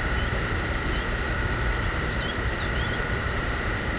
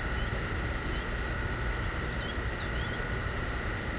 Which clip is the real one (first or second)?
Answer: second